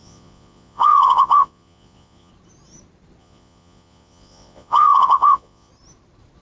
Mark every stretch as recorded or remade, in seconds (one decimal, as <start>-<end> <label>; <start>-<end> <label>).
0.0-2.3 remade; 2.3-3.2 recorded; 3.2-5.7 remade; 5.7-6.4 recorded